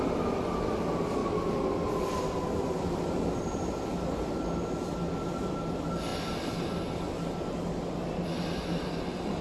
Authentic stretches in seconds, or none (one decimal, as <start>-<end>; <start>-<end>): 0.0-9.4